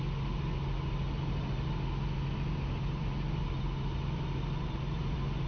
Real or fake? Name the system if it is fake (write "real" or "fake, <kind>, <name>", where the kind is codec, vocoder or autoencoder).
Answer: real